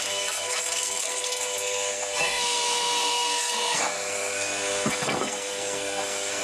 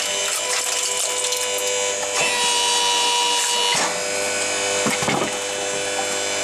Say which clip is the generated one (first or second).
first